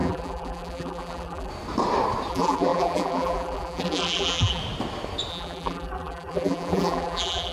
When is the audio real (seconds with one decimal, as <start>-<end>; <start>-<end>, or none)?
1.5-2.3; 4.6-5.3